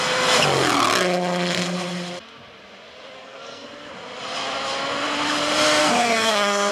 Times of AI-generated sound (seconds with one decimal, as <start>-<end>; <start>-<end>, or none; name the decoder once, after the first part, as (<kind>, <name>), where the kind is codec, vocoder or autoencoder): 3.2-3.9 (codec, SNAC); 5.8-6.7